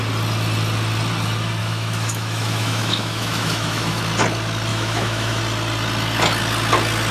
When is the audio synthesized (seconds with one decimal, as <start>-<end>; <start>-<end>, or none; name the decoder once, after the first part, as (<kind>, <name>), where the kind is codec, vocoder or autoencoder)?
1.6-4.0 (autoencoder, DAC-VAE); 4.7-5.4